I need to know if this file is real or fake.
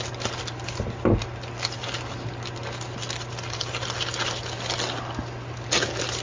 real